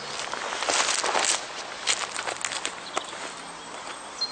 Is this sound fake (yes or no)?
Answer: no